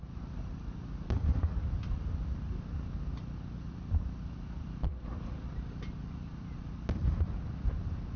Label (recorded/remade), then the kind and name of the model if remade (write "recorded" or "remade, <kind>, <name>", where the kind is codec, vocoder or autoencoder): recorded